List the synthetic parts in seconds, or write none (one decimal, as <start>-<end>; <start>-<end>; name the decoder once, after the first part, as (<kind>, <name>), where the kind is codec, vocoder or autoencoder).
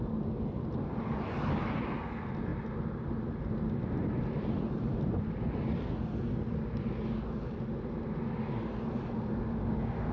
none